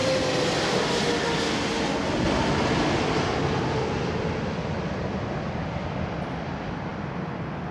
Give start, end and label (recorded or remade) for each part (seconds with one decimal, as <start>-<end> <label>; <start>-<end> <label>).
0.0-7.7 recorded